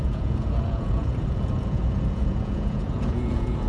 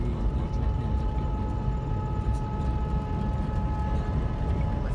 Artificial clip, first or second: first